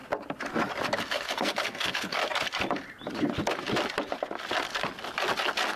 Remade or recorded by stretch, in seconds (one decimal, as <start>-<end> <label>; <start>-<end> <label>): 0.0-1.0 recorded; 1.0-2.2 remade; 2.2-5.8 recorded